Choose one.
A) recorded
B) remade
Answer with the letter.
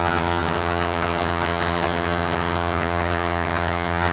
B